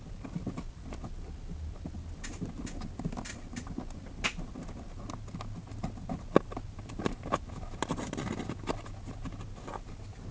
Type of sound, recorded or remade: recorded